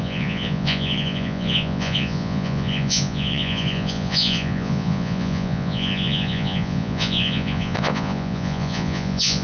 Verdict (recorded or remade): remade